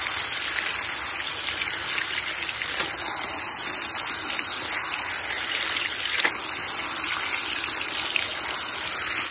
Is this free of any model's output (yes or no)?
yes